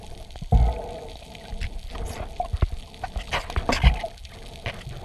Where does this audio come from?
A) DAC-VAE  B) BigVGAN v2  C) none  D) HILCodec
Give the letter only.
C